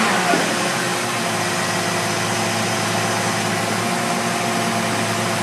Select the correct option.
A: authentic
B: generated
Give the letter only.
A